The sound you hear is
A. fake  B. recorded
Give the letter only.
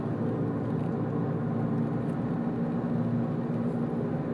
B